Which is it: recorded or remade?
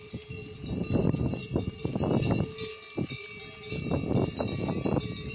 recorded